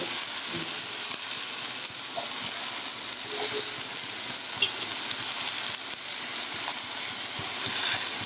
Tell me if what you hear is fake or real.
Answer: real